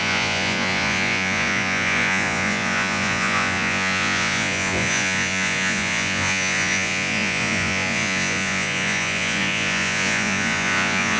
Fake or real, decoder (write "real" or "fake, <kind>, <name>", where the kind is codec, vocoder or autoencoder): fake, vocoder, Vocos